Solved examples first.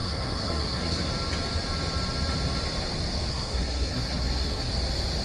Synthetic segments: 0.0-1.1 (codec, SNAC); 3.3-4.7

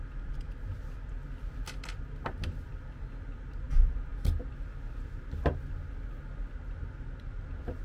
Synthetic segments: none

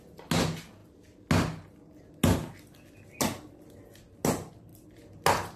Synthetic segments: none

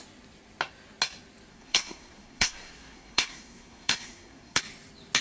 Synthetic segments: 1.5-4.6 (codec, SNAC)

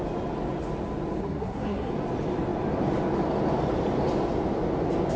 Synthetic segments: 1.2-1.9 (codec, SNAC)